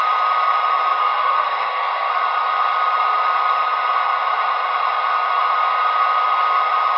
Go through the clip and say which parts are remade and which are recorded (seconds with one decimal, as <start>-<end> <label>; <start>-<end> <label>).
0.0-1.0 recorded; 1.0-2.1 remade; 2.1-7.0 recorded